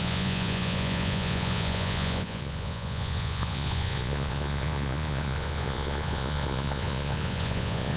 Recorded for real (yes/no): no